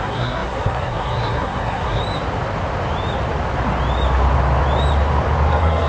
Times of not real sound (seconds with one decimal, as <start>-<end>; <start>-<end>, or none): 0.0-2.0; 5.5-5.9